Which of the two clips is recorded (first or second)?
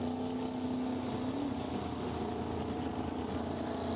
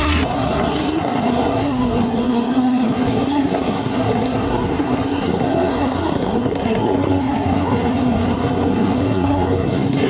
first